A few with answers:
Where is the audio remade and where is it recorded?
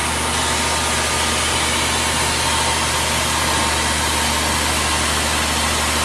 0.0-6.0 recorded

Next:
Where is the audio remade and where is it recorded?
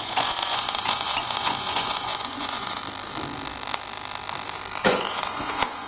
0.0-2.8 remade; 2.8-4.8 recorded; 4.8-5.9 remade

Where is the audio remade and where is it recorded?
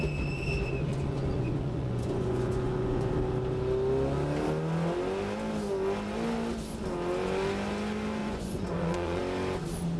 0.0-0.9 recorded; 0.9-3.1 remade; 3.1-8.2 recorded; 8.2-9.2 remade; 9.2-10.0 recorded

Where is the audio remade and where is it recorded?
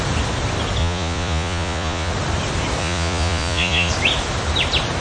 0.0-0.8 recorded; 0.8-2.1 remade; 2.1-2.8 recorded; 2.8-3.9 remade; 3.9-5.0 recorded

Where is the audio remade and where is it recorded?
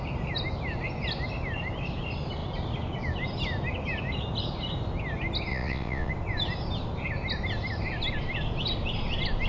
0.0-5.5 recorded; 5.5-6.1 remade; 6.1-9.5 recorded